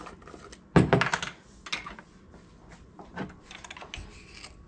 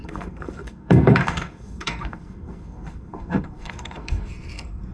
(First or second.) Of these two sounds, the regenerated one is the second